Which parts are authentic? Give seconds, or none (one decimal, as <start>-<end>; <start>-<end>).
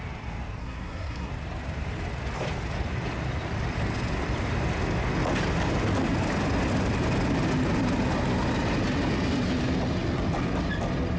0.0-0.6; 1.3-11.2